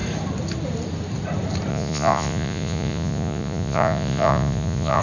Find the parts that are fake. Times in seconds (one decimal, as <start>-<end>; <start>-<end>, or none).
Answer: 1.7-5.0